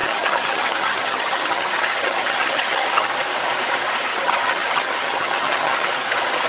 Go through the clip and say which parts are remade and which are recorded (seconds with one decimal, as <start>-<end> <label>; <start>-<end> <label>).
0.0-3.1 remade; 3.1-4.1 recorded; 4.1-5.9 remade; 5.9-6.5 recorded